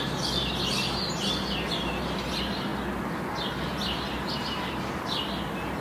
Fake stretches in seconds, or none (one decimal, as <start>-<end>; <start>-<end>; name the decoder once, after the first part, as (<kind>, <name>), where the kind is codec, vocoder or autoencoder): none